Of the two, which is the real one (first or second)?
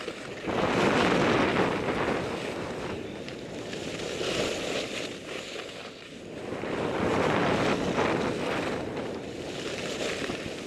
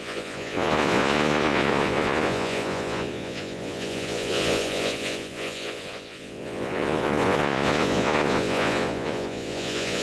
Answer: first